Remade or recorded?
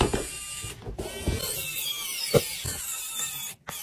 recorded